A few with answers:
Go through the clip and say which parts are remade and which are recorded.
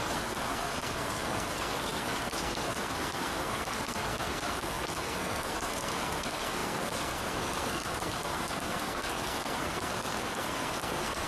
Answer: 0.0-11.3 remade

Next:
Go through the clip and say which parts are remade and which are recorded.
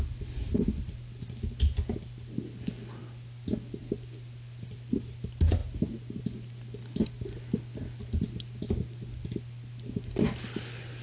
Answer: 0.0-11.0 recorded